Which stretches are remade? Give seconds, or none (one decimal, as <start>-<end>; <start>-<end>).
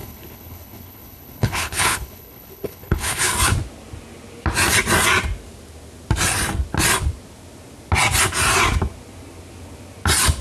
0.0-3.3